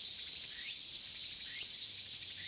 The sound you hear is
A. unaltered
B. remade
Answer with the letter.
A